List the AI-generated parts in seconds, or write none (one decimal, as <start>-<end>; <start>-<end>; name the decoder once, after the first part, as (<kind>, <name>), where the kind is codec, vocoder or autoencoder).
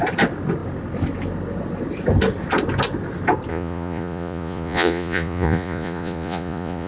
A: 3.5-6.9 (vocoder, Vocos)